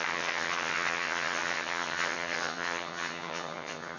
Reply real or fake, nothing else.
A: fake